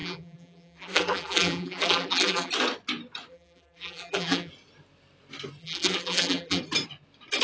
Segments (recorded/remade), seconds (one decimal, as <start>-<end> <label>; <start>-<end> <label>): 0.0-2.5 remade; 2.5-3.3 recorded; 3.3-4.5 remade; 4.5-5.6 recorded; 5.6-6.6 remade; 6.6-7.4 recorded